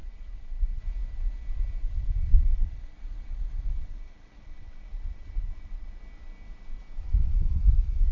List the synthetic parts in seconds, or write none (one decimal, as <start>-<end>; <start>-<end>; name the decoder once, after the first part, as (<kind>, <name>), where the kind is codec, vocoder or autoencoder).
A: 0.0-0.8 (vocoder, Vocos); 1.8-6.0